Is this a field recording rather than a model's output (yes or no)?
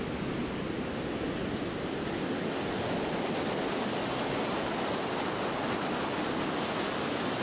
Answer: yes